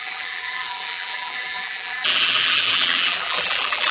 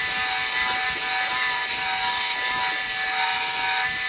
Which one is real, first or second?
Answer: second